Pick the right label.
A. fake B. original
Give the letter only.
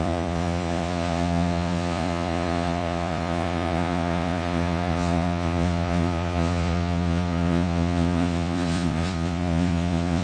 A